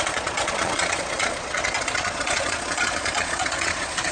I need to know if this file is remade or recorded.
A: remade